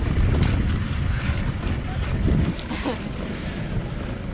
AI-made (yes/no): no